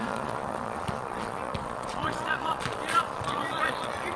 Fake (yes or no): yes